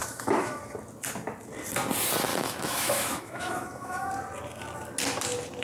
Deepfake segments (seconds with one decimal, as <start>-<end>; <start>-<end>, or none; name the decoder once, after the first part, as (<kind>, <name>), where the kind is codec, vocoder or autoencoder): 0.0-0.6 (autoencoder, DAC-VAE); 2.3-4.1